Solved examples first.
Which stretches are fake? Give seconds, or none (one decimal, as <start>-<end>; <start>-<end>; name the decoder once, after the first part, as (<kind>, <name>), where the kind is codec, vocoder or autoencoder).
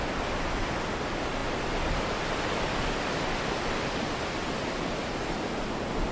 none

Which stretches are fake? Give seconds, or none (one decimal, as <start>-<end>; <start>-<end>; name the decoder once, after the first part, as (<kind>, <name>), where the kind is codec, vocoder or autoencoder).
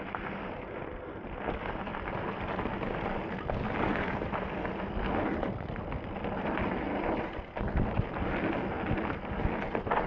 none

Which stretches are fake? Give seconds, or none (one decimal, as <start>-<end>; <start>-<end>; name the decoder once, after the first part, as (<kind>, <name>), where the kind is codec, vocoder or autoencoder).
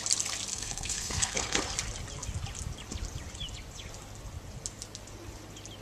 0.5-1.6 (codec, SNAC)